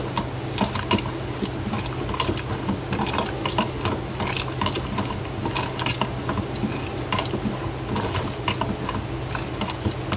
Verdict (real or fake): real